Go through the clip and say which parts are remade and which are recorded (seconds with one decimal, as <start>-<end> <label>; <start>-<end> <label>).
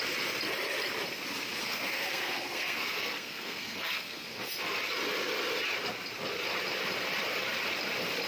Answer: 0.0-1.6 recorded; 1.6-4.4 remade; 4.4-8.3 recorded